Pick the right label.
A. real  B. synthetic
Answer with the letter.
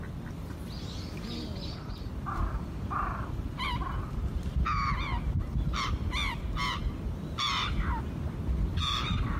A